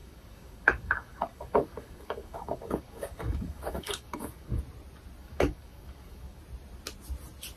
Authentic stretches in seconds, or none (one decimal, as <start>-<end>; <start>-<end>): 4.6-5.2; 6.4-7.6